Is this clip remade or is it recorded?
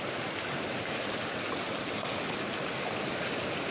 recorded